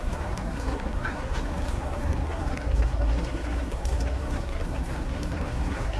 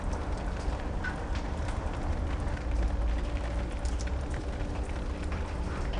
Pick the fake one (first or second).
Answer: first